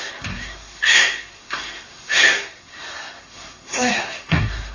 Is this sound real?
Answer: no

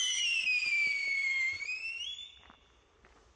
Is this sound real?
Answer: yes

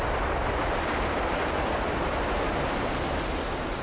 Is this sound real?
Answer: yes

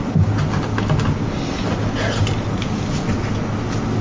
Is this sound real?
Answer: yes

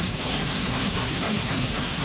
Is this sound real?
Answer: no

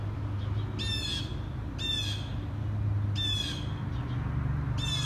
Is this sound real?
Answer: yes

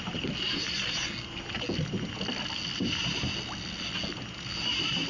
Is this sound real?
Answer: yes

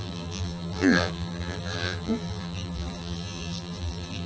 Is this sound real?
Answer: no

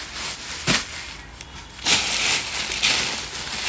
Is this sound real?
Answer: yes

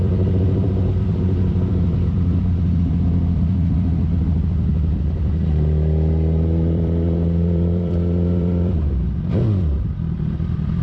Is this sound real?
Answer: no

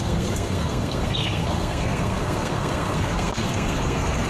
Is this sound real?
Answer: no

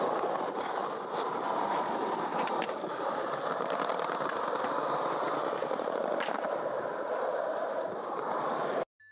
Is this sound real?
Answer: yes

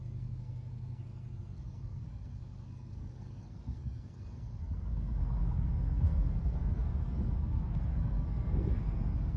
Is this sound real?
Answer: no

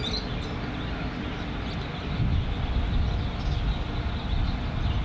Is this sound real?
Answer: yes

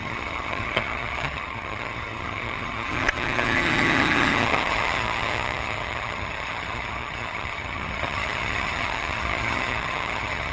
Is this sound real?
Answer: no